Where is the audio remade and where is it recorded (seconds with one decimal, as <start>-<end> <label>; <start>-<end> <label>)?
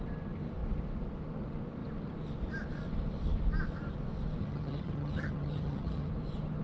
0.0-4.4 recorded; 4.4-6.1 remade; 6.1-6.6 recorded